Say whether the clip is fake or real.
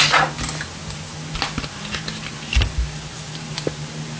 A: real